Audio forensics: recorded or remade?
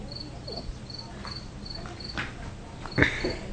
recorded